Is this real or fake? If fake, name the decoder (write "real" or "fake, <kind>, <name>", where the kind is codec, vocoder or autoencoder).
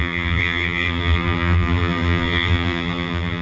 fake, vocoder, BigVGAN v2